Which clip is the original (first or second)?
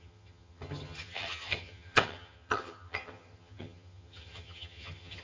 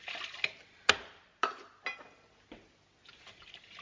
second